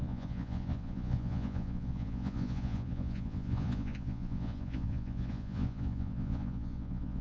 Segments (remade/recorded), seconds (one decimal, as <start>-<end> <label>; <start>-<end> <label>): 0.0-7.2 remade